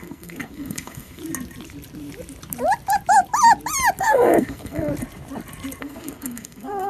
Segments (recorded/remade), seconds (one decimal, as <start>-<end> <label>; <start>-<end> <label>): 0.0-1.2 remade; 1.2-4.0 recorded; 4.0-4.9 remade; 4.9-5.8 recorded; 5.8-6.9 remade